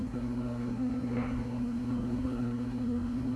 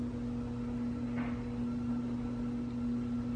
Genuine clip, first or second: second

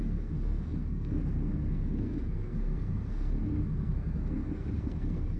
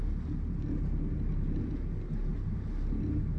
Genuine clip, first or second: second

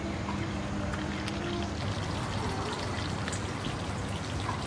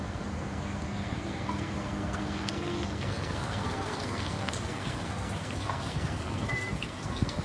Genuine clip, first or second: first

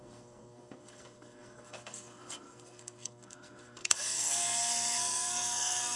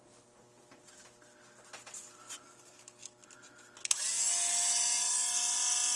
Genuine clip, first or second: second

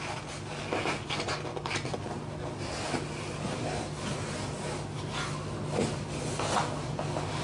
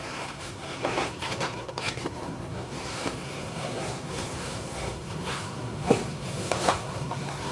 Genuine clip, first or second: first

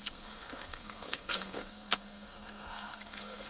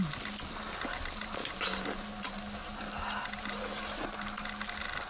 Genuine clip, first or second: second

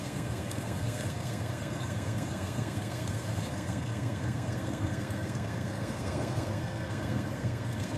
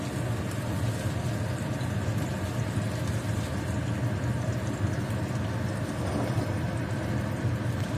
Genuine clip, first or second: second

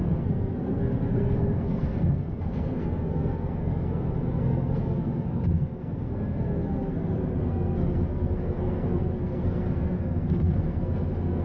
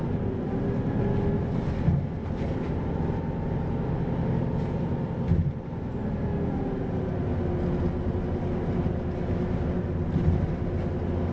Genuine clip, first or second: second